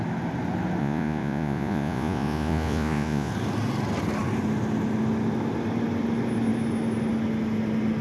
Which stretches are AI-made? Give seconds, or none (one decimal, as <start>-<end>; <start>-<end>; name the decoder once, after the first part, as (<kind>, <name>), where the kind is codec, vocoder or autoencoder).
0.8-3.3 (vocoder, Vocos)